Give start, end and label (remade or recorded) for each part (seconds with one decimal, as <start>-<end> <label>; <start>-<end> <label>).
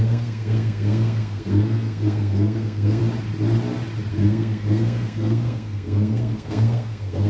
0.0-3.0 remade; 3.0-4.1 recorded; 4.1-7.3 remade